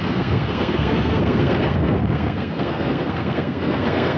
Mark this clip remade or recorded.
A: remade